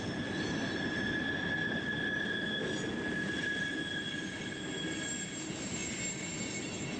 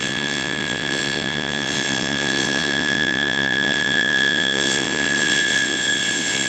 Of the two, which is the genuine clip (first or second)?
first